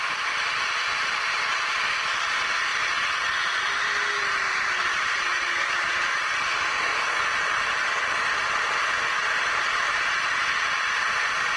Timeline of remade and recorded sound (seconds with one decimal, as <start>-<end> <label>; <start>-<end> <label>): 0.0-11.6 recorded